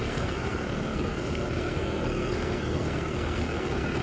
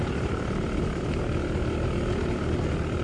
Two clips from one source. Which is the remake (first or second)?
first